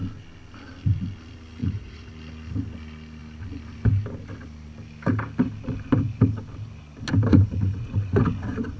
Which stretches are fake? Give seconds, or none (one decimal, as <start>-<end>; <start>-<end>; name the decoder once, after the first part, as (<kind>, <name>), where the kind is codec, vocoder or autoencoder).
1.6-2.1 (vocoder, Vocos); 7.3-8.2